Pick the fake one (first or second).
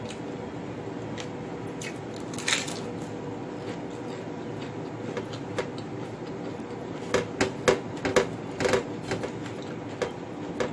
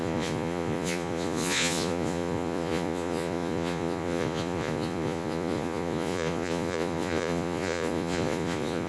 second